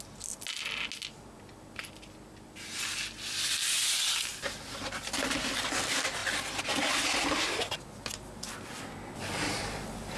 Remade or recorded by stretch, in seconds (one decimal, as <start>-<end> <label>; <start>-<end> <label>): 0.0-4.3 recorded; 4.3-5.6 remade; 5.6-10.2 recorded